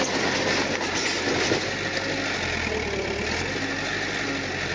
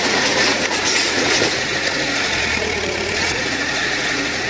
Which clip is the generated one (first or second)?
second